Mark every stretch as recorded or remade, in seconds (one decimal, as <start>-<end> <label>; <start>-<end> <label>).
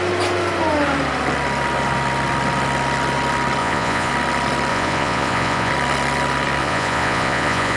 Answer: 0.0-3.6 recorded; 3.6-4.1 remade; 4.1-4.7 recorded; 4.7-5.7 remade; 5.7-6.6 recorded; 6.6-7.8 remade